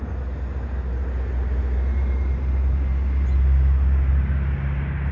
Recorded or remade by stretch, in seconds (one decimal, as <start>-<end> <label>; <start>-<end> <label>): 0.0-5.1 recorded